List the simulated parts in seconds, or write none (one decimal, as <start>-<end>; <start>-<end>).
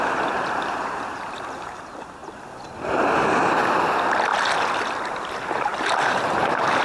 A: 0.0-2.2; 3.9-4.3; 5.3-6.8